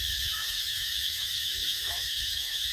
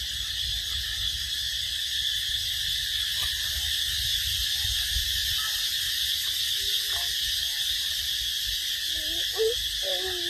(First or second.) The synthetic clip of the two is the first